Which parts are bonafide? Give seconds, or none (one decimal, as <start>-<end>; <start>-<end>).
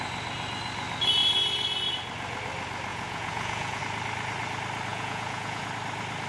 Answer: 0.0-2.9; 3.8-4.9; 5.6-6.3